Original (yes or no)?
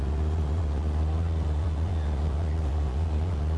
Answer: no